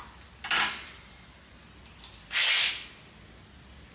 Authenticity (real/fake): real